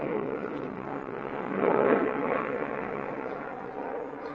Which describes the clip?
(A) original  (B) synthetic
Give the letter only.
B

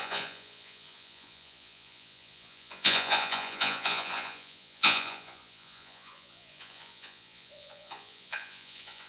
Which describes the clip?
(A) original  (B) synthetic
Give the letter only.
B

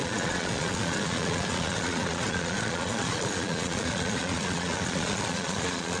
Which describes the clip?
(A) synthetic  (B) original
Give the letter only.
A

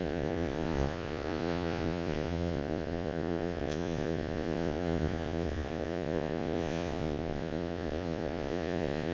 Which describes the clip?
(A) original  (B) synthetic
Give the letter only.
B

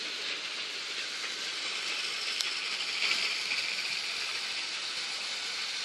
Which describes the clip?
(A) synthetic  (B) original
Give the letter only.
B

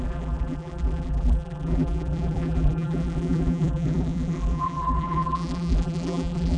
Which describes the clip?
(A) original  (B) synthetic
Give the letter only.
B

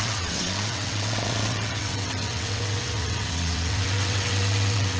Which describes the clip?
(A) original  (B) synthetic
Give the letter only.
B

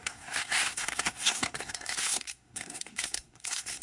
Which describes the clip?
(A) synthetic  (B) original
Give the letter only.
A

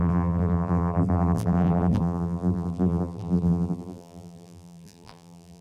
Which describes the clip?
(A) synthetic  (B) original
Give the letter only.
A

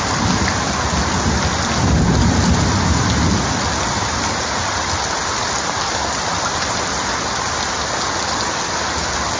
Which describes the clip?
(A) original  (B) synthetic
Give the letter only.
A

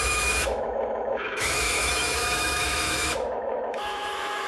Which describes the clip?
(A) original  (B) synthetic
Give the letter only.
B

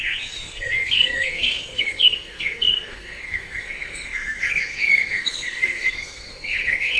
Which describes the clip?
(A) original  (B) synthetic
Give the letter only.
B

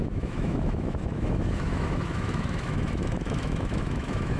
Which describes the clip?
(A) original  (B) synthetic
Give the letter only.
B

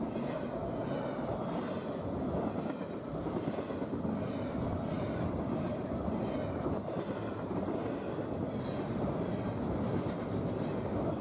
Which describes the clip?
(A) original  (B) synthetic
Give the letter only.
A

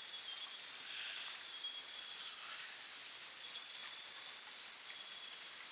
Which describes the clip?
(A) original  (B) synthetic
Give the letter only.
A